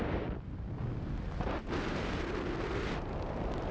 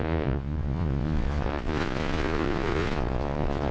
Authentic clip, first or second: first